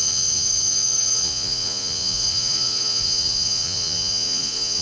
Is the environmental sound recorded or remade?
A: remade